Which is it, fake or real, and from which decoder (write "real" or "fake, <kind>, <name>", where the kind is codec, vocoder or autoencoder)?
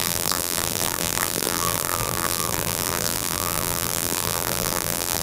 fake, vocoder, BigVGAN v2